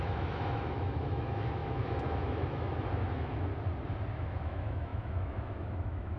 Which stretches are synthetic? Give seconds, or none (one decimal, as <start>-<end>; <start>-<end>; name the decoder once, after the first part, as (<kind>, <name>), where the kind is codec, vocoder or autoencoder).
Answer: 0.0-3.5 (autoencoder, DAC-VAE); 4.1-6.2

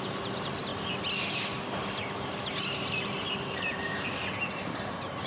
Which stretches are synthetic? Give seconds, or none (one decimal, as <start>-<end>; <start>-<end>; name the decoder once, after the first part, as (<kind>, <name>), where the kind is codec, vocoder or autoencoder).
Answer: 0.0-0.7 (vocoder, BigVGAN v2); 2.5-5.3

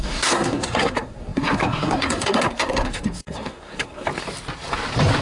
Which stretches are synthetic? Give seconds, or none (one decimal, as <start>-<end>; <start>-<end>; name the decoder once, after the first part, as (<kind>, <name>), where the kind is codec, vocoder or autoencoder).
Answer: 0.0-4.1 (codec, SNAC)

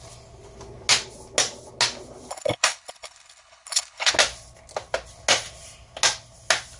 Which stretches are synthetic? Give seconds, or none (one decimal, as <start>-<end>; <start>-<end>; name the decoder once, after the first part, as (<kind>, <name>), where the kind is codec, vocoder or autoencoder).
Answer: 2.3-4.1 (codec, HILCodec)